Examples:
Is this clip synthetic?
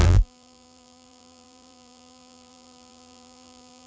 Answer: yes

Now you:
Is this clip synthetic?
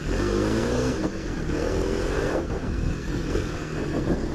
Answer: yes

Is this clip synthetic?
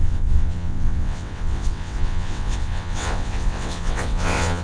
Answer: yes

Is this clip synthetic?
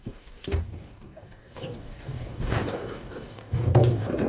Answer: yes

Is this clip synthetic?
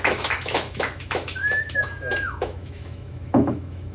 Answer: yes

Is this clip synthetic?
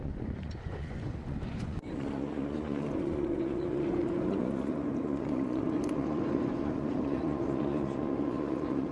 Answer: yes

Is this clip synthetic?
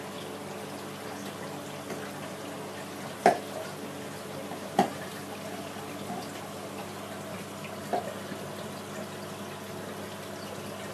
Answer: no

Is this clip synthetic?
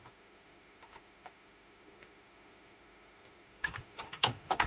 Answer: yes